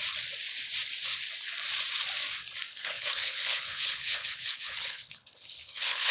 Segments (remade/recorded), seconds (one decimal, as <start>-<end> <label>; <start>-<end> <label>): 0.0-2.7 recorded; 2.7-6.1 remade